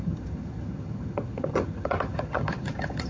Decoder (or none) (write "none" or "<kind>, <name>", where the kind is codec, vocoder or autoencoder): vocoder, HiFi-GAN